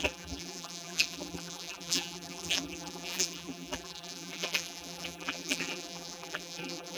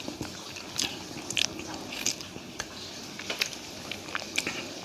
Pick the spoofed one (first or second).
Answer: first